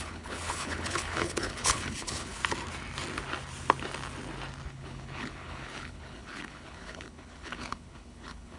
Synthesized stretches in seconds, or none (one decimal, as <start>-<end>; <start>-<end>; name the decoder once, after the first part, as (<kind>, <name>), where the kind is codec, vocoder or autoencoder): 0.0-2.4 (codec, HILCodec); 4.7-8.6

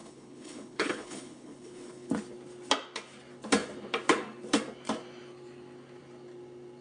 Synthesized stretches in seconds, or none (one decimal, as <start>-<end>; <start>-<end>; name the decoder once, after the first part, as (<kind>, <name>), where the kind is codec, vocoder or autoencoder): 0.0-2.1 (codec, HILCodec)

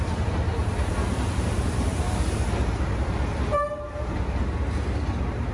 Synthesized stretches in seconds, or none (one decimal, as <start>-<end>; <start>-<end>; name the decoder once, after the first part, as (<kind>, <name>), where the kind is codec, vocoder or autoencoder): none

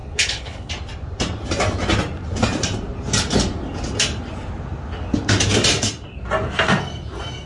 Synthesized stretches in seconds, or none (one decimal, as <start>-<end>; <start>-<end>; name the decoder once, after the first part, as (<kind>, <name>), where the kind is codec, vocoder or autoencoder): 0.0-0.7 (codec, HILCodec)

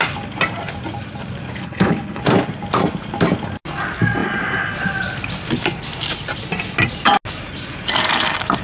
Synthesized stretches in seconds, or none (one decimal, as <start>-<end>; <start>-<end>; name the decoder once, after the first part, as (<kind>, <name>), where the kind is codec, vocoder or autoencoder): 1.6-2.2 (codec, HILCodec)